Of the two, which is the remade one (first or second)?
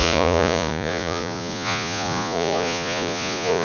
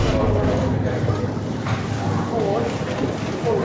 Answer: first